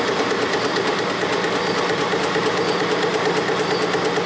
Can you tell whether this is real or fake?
real